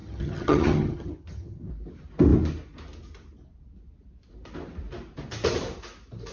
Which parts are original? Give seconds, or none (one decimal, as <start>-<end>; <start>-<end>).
1.7-6.3